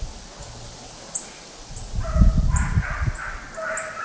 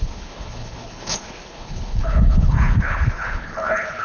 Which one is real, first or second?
first